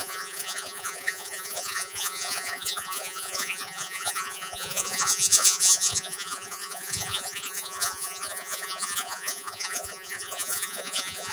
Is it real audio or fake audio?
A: fake